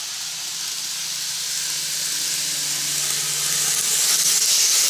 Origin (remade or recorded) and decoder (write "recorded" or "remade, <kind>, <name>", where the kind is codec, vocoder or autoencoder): recorded